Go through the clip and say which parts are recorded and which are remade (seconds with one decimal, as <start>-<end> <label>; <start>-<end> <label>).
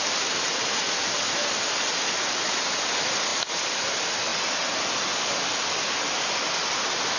0.0-7.2 recorded